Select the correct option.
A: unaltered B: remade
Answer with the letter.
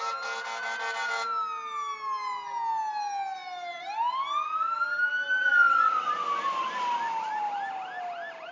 A